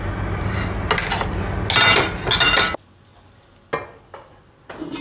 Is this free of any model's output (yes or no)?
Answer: yes